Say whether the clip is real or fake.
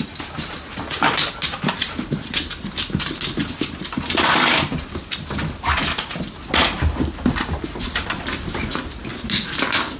real